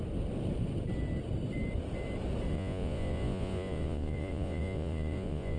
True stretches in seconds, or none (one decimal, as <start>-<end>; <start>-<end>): 0.0-2.5